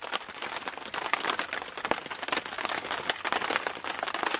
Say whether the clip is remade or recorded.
recorded